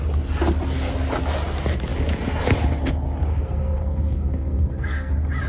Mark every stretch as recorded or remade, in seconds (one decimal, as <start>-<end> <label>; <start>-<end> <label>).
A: 0.0-3.3 recorded; 3.3-5.1 remade; 5.1-5.5 recorded